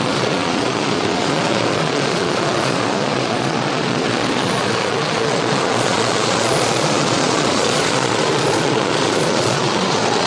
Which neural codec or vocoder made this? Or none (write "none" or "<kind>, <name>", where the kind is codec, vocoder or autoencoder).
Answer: vocoder, Vocos